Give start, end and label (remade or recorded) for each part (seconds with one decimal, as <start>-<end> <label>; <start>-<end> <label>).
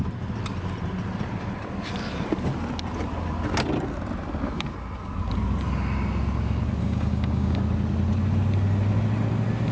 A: 0.0-6.8 recorded; 6.8-7.6 remade; 7.6-9.7 recorded